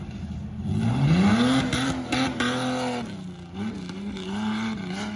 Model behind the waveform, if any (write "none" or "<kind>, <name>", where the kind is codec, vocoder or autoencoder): none